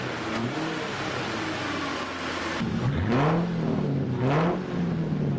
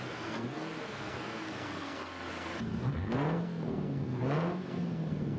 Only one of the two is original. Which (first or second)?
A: first